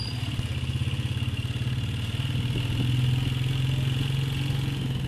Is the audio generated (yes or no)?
no